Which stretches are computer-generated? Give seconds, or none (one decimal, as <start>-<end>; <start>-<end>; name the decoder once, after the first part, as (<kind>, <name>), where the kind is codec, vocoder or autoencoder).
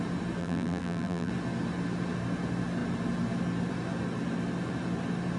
0.4-1.3 (vocoder, BigVGAN v2)